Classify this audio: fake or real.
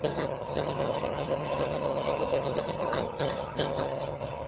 fake